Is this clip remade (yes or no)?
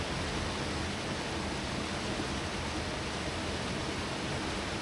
no